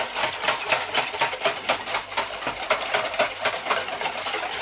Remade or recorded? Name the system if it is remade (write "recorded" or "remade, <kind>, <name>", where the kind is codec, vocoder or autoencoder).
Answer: recorded